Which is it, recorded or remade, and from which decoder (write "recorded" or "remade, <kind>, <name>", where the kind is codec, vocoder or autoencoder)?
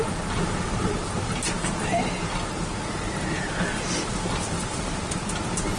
recorded